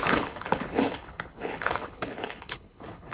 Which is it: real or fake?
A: fake